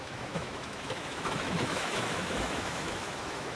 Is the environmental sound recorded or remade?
remade